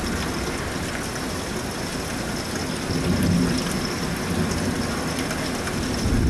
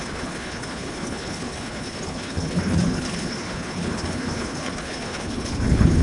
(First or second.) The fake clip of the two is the second